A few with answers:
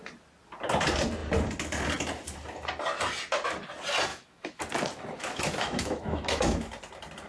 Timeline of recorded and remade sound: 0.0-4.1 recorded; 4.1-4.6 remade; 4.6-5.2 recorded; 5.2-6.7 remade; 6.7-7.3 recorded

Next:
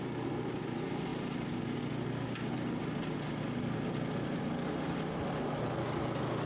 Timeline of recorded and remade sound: 0.0-6.5 recorded